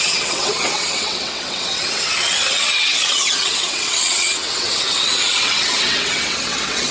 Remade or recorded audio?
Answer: remade